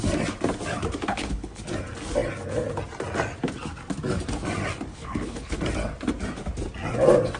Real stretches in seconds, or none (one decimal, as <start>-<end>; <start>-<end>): 0.0-1.1; 1.6-4.9; 5.6-7.4